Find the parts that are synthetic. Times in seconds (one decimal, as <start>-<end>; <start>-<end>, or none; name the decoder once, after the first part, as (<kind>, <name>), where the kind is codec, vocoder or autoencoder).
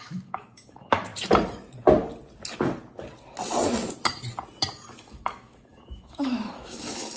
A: 0.0-1.1 (autoencoder, DAC-VAE); 4.9-7.2